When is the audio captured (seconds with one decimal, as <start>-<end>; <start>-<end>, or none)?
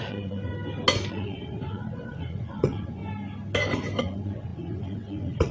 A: 0.5-1.1; 3.0-4.0